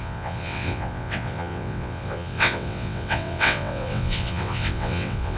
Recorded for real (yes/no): no